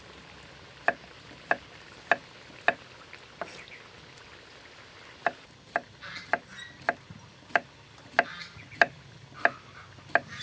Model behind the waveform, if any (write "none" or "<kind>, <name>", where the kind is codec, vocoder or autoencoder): none